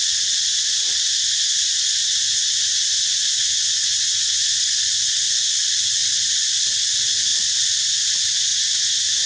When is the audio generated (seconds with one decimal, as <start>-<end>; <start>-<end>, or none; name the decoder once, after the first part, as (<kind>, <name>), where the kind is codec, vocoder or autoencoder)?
3.4-4.7 (vocoder, Vocos); 8.5-9.3